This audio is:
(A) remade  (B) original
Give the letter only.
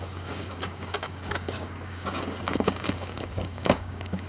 A